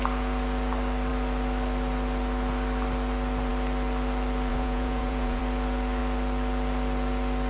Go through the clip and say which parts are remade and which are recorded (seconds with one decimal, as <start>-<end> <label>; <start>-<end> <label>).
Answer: 0.0-4.5 recorded; 4.5-5.4 remade; 5.4-7.5 recorded